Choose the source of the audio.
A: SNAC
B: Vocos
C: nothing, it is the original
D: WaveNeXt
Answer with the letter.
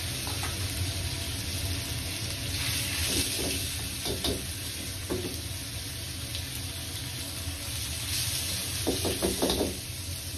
C